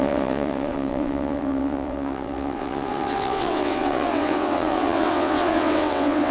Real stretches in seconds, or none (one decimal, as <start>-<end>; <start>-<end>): none